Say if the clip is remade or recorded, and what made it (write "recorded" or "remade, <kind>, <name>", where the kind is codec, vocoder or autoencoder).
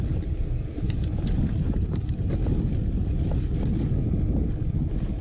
recorded